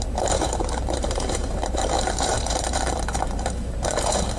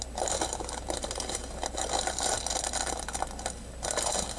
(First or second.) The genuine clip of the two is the second